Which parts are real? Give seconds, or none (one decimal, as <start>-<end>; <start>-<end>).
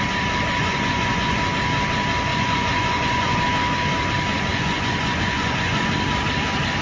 0.0-0.6; 1.4-2.3; 3.4-4.5; 5.8-6.8